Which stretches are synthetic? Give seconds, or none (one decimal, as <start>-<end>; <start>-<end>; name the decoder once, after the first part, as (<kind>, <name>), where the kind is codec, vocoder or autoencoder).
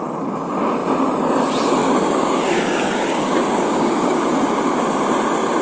1.8-4.8 (codec, DAC)